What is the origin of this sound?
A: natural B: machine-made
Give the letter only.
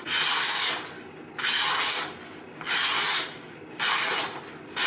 A